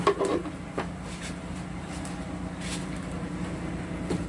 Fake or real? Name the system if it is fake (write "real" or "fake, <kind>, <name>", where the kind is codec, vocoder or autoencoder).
real